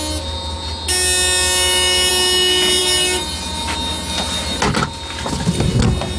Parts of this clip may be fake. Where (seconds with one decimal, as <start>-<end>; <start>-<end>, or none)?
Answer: none